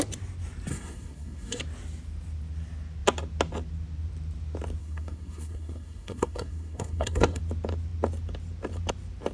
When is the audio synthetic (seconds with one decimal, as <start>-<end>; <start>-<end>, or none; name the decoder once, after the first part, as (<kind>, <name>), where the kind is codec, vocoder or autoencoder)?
0.7-1.6 (codec, SNAC); 4.8-7.4